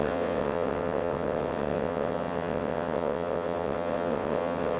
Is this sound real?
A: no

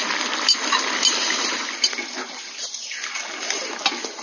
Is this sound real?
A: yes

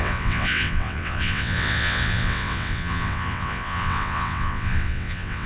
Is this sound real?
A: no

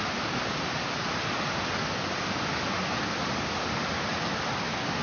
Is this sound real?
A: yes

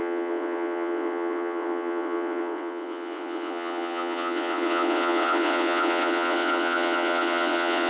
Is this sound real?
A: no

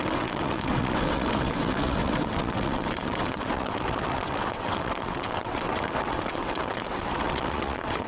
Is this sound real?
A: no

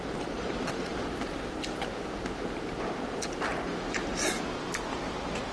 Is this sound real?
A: yes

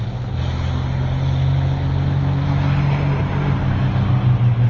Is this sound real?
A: yes